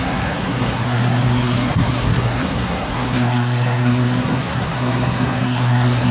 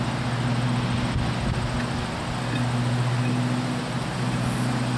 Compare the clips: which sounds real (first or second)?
second